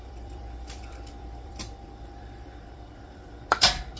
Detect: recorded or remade remade